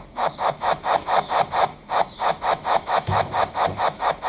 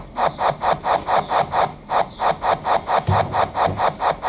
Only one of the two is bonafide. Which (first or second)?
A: second